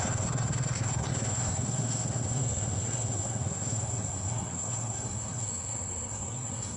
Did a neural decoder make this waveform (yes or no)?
yes